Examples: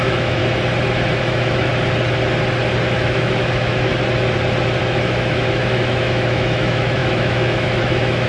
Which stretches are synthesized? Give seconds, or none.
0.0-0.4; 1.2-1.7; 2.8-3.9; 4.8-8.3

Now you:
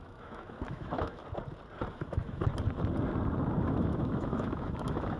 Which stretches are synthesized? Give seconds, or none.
0.0-1.2; 1.9-2.4; 3.6-5.2

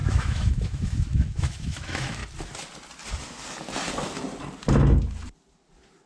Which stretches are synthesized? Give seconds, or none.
0.0-2.2